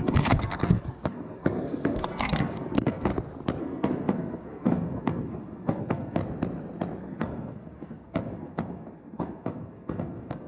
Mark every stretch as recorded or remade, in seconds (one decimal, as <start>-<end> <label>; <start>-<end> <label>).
0.0-3.1 remade; 3.1-3.6 recorded; 3.6-6.2 remade; 6.2-7.0 recorded; 7.0-10.5 remade